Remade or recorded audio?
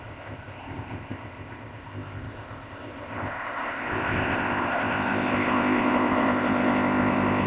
remade